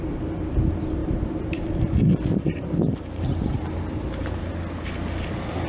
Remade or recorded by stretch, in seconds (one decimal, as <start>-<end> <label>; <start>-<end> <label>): 0.0-5.7 recorded